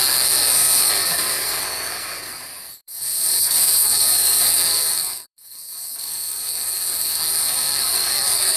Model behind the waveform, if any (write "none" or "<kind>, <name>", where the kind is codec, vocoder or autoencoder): codec, SNAC